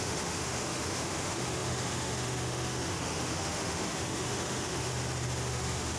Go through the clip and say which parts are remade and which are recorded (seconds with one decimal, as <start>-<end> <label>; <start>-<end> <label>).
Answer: 0.0-4.9 remade; 4.9-5.5 recorded; 5.5-6.0 remade

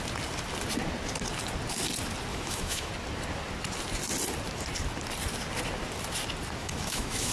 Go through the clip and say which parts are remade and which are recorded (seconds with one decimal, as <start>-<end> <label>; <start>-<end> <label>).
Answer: 0.0-2.3 recorded; 2.3-2.9 remade; 2.9-6.6 recorded; 6.6-7.3 remade

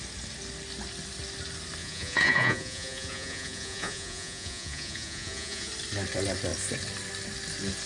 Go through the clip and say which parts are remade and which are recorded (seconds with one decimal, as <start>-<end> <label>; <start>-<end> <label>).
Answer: 0.0-1.8 recorded; 1.8-5.7 remade; 5.7-7.9 recorded

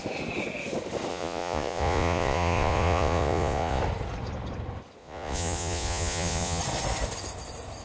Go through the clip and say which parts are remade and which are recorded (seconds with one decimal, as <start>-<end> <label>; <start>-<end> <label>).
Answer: 0.0-1.1 recorded; 1.1-3.8 remade; 3.8-5.0 recorded; 5.0-6.6 remade; 6.6-7.8 recorded